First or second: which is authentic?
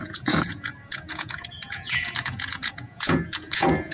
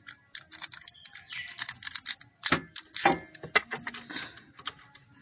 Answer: second